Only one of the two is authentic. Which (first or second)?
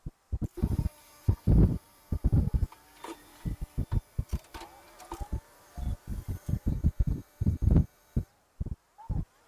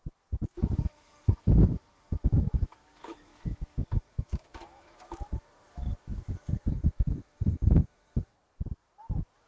first